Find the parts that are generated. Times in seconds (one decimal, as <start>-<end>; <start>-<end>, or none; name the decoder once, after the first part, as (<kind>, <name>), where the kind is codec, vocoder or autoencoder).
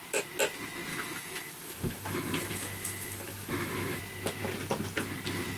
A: 0.9-4.0 (autoencoder, DAC-VAE)